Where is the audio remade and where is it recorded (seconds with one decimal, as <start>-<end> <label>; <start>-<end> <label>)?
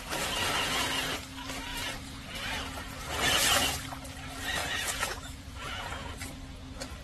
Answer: 0.0-0.4 recorded; 0.4-1.1 remade; 1.1-4.6 recorded; 4.6-6.1 remade; 6.1-7.0 recorded